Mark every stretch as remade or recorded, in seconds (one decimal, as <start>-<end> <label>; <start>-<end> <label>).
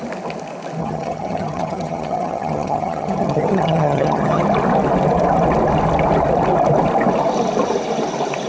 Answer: 0.0-0.8 recorded; 0.8-4.4 remade; 4.4-8.5 recorded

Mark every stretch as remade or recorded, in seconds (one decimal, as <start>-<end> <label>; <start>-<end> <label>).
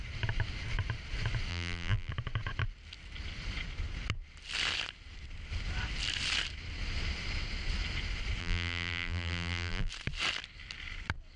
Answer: 0.0-1.5 recorded; 1.5-2.1 remade; 2.1-8.4 recorded; 8.4-9.9 remade; 9.9-11.4 recorded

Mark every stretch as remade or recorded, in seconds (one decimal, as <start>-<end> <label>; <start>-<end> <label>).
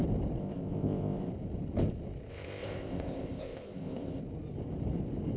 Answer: 0.0-0.4 recorded; 0.4-1.3 remade; 1.3-2.3 recorded; 2.3-4.2 remade; 4.2-5.4 recorded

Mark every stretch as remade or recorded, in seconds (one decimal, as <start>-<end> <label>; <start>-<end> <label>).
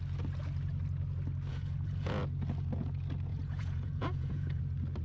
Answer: 0.0-1.5 recorded; 1.5-2.2 remade; 2.2-3.3 recorded; 3.3-4.6 remade; 4.6-5.0 recorded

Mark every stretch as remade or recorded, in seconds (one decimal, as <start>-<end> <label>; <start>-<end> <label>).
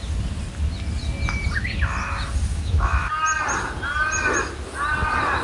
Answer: 0.0-2.5 recorded; 2.5-3.1 remade; 3.1-5.4 recorded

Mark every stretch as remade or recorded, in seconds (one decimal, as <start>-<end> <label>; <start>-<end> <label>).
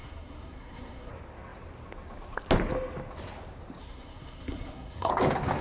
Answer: 0.0-1.1 remade; 1.1-3.8 recorded; 3.8-5.1 remade; 5.1-5.6 recorded